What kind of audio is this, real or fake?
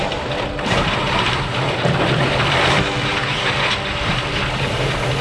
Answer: fake